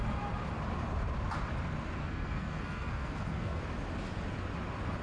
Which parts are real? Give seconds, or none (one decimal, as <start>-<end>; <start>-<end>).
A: 0.0-2.0; 3.6-5.0